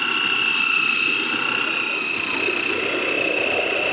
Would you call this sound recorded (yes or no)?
yes